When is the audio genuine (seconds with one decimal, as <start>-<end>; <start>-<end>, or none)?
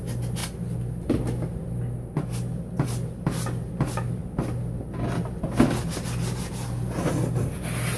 0.0-8.0